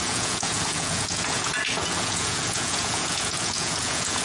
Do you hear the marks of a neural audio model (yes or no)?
yes